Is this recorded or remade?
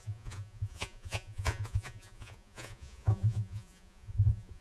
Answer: remade